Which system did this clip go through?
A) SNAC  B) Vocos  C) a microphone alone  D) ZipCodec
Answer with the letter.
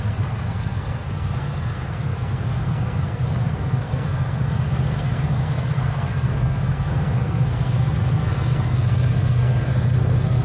A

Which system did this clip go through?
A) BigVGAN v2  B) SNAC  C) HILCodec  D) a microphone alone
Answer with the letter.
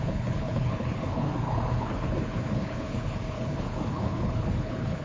C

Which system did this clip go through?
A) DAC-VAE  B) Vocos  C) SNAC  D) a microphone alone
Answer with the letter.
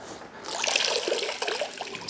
D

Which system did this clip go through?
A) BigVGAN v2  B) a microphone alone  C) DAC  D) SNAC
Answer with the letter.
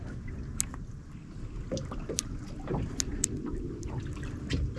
B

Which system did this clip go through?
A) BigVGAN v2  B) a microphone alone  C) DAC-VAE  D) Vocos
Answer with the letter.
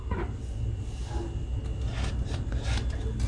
B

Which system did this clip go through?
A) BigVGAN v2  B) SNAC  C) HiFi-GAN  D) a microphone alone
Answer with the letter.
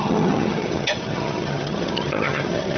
C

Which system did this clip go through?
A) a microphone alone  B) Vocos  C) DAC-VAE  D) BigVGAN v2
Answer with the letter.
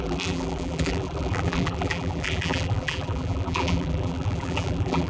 D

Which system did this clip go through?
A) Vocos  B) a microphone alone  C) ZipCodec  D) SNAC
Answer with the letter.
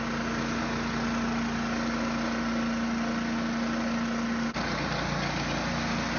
B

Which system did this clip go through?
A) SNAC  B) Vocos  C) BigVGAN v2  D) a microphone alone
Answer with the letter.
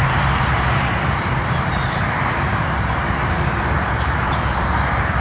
C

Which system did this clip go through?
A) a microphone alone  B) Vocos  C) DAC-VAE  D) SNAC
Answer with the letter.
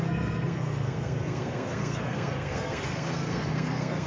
D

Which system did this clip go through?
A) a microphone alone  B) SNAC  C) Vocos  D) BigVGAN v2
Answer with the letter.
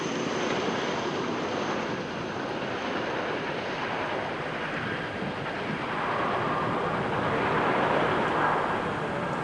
A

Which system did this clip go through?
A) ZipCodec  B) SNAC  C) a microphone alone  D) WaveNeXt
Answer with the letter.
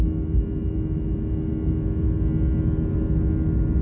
C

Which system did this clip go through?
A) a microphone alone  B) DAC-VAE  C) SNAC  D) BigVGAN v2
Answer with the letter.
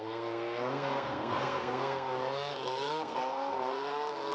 C